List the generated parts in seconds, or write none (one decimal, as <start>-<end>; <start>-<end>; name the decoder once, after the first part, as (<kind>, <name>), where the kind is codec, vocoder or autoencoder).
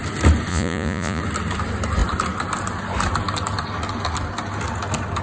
0.5-1.2 (vocoder, Vocos)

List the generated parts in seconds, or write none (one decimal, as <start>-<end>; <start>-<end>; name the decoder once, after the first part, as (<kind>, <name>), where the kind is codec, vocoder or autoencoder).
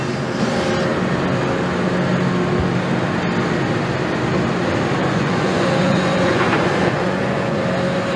5.0-7.6 (vocoder, Vocos)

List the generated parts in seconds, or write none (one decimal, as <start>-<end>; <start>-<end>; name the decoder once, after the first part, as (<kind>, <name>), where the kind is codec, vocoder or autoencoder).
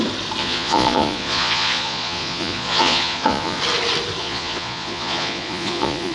0.4-3.6 (vocoder, Vocos); 4.2-6.1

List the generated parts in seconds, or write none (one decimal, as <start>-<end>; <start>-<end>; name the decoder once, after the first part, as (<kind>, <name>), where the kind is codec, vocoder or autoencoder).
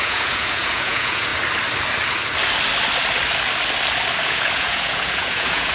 0.0-1.3 (vocoder, Vocos); 4.2-5.7